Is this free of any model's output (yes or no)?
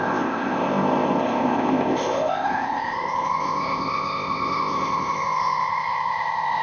no